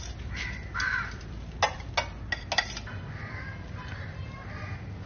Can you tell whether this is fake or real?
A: real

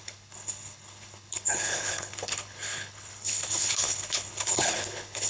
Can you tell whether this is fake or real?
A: fake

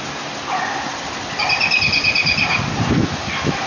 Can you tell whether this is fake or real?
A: real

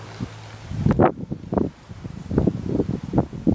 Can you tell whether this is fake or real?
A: fake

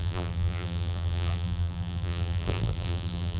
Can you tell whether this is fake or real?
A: fake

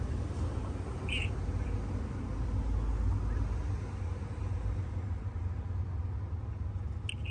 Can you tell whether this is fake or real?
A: real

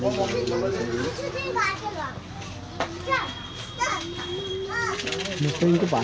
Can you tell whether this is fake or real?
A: real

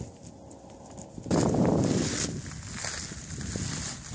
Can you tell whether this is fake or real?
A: real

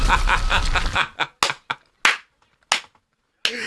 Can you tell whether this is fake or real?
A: real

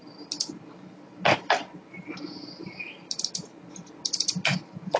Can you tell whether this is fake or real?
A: real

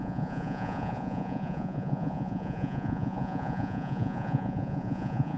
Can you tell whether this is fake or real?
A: fake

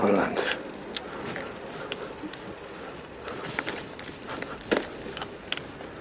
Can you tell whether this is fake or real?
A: real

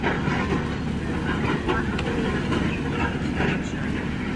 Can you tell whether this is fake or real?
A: real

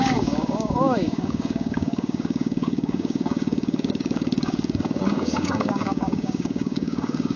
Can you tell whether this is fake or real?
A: fake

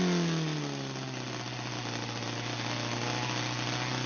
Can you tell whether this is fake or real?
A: real